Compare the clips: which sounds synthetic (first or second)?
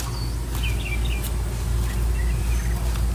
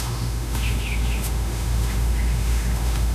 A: second